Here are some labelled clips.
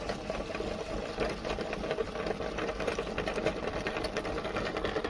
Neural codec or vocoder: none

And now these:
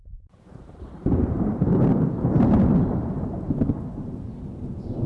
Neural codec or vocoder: vocoder, BigVGAN v2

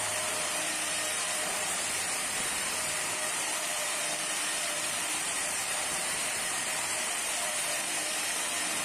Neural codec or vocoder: vocoder, BigVGAN v2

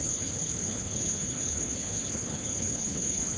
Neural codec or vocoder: codec, HILCodec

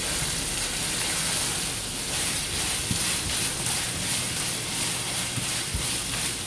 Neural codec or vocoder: none